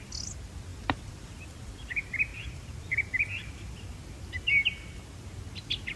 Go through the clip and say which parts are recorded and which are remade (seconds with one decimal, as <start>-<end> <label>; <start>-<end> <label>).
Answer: 0.0-0.7 recorded; 0.7-1.4 remade; 1.4-2.3 recorded; 2.3-3.8 remade; 3.8-6.0 recorded